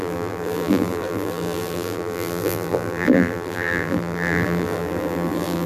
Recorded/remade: remade